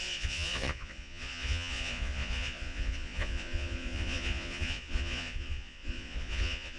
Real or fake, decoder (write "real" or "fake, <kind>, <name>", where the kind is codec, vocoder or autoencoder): fake, vocoder, Vocos